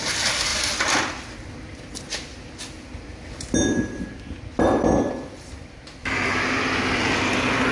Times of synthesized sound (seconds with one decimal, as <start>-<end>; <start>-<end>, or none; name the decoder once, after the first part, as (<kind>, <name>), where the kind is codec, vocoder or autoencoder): none